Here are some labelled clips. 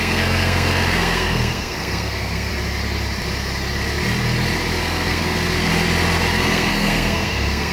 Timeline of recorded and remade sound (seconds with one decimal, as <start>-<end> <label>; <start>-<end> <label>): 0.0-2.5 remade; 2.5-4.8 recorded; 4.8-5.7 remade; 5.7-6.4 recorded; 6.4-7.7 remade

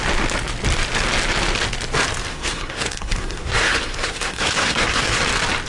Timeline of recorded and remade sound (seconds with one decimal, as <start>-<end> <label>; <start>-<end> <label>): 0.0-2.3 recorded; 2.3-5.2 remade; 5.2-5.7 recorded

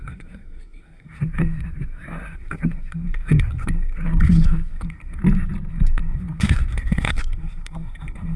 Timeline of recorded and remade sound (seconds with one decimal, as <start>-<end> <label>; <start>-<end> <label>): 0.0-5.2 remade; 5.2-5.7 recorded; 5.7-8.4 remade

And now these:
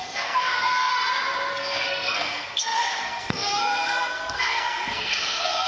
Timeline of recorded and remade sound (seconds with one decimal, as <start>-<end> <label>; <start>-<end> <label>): 0.0-0.9 remade; 0.9-1.5 recorded; 1.5-5.7 remade

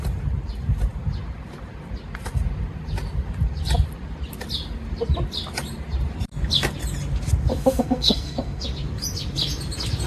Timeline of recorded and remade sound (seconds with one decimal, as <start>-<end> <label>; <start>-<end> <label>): 0.0-7.5 recorded; 7.5-8.6 remade; 8.6-10.1 recorded

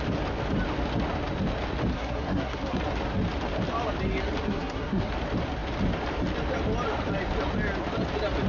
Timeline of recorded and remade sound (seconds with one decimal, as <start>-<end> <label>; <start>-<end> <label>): 0.0-1.9 recorded; 1.9-2.8 remade; 2.8-4.4 recorded; 4.4-5.1 remade; 5.1-8.5 recorded

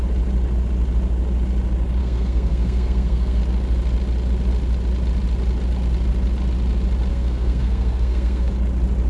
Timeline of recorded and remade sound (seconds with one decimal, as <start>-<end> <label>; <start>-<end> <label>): 0.0-2.0 recorded; 2.0-3.4 remade; 3.4-7.1 recorded; 7.1-8.5 remade; 8.5-9.1 recorded

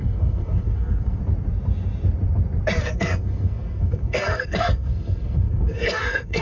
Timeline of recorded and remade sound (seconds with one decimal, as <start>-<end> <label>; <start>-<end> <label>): 0.0-1.2 remade; 1.2-2.8 recorded; 2.8-6.4 remade